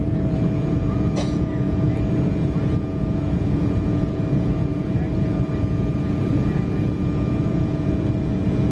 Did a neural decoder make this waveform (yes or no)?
yes